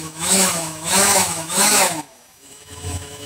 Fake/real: fake